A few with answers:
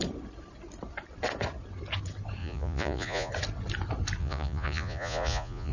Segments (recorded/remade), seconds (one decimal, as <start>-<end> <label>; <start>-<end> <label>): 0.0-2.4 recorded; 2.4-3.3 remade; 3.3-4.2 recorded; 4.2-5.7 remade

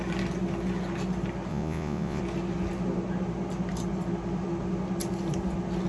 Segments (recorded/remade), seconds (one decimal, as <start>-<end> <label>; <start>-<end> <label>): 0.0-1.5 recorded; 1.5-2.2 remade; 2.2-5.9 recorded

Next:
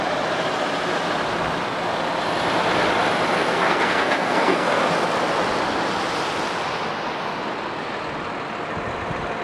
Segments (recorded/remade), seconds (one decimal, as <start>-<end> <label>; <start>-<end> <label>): 0.0-3.3 recorded; 3.3-4.9 remade; 4.9-9.4 recorded